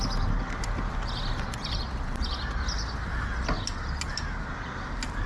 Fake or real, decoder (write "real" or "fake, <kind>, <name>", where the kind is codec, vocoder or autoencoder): real